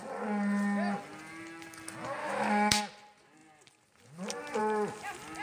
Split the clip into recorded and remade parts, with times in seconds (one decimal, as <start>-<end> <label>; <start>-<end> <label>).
0.0-2.2 recorded; 2.2-2.8 remade; 2.8-5.4 recorded